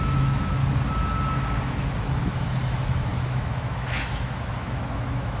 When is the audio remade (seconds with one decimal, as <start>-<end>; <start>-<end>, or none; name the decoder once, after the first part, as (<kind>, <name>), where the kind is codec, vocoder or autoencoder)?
0.0-0.6 (autoencoder, DAC-VAE); 1.7-5.4

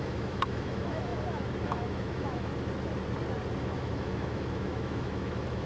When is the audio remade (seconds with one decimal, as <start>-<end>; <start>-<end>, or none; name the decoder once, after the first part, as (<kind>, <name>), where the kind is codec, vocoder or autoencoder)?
0.0-2.5 (autoencoder, DAC-VAE); 3.6-5.7

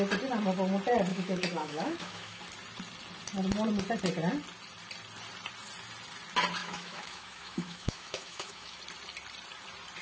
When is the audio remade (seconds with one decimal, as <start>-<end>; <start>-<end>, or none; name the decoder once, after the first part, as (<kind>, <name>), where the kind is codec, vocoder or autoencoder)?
1.1-2.4 (autoencoder, DAC-VAE); 6.6-8.8

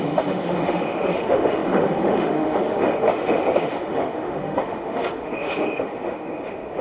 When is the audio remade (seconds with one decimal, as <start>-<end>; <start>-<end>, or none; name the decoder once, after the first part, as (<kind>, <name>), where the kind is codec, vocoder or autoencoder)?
0.0-6.8 (autoencoder, DAC-VAE)

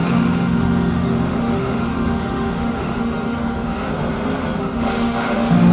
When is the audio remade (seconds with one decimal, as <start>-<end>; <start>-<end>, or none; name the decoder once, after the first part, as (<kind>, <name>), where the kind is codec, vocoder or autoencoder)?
0.0-3.9 (autoencoder, DAC-VAE); 4.6-5.7